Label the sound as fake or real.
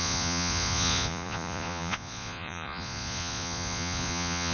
fake